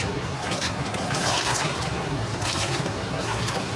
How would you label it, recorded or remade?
remade